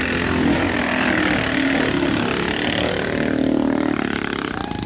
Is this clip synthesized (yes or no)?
no